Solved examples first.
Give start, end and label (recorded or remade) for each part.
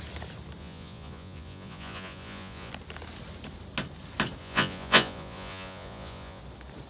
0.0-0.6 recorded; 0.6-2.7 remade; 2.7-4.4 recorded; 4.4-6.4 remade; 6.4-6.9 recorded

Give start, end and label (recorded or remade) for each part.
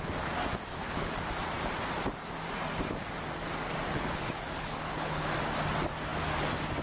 0.0-0.7 recorded; 0.7-1.3 remade; 1.3-3.9 recorded; 3.9-5.3 remade; 5.3-6.8 recorded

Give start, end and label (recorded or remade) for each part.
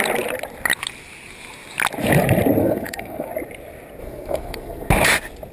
0.0-2.6 recorded; 2.6-3.3 remade; 3.3-4.0 recorded; 4.0-4.9 remade; 4.9-5.5 recorded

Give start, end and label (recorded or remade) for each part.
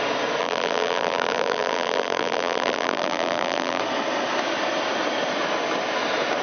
0.0-0.4 recorded; 0.4-3.8 remade; 3.8-6.4 recorded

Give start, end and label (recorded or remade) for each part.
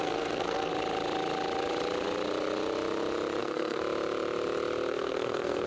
0.0-0.7 remade; 0.7-3.4 recorded; 3.4-3.8 remade; 3.8-4.9 recorded; 4.9-5.7 remade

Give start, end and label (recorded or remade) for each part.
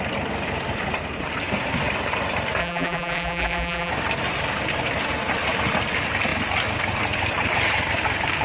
0.0-2.6 recorded; 2.6-3.9 remade; 3.9-8.4 recorded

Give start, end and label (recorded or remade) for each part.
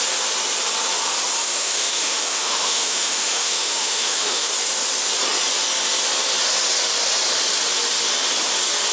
0.0-1.4 recorded; 1.4-4.5 remade; 4.5-8.9 recorded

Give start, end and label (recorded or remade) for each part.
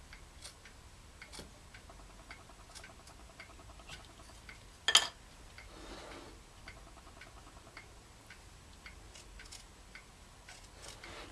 0.0-11.3 recorded